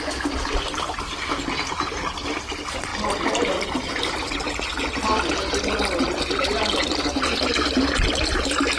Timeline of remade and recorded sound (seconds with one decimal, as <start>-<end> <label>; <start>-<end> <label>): 0.0-8.8 recorded